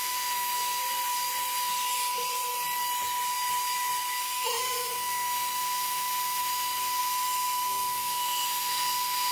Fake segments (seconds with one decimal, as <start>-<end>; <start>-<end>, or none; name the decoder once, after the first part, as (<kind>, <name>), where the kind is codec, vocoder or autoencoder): 0.0-0.8 (autoencoder, DAC-VAE); 4.2-9.3